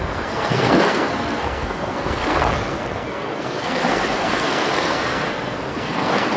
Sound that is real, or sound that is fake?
fake